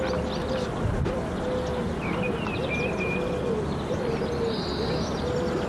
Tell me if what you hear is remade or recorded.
remade